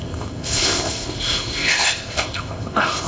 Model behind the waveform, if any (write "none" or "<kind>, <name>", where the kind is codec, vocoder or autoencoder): codec, ZipCodec